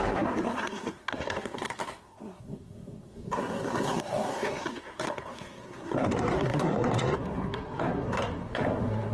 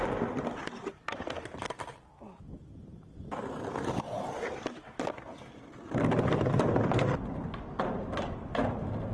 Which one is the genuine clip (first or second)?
second